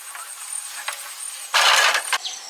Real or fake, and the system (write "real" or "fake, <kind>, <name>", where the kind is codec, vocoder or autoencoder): real